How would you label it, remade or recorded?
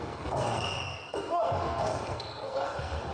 remade